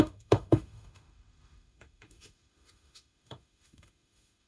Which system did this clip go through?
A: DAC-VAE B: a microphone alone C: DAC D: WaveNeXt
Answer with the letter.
A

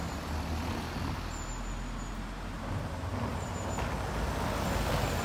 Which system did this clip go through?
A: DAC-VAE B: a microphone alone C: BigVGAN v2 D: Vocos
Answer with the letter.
B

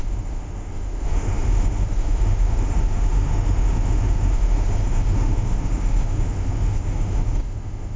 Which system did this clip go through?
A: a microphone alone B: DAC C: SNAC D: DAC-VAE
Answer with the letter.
D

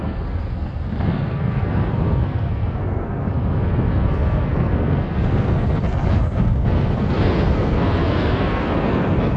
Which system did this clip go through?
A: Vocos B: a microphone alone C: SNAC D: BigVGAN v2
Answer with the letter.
C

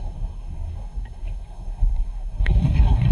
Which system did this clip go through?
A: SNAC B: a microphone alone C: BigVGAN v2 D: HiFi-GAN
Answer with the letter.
A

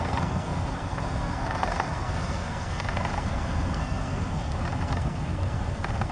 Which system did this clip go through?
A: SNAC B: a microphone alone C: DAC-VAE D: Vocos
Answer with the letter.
A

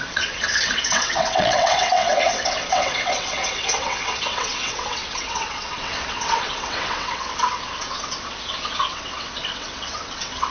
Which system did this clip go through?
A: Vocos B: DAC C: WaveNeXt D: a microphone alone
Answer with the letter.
C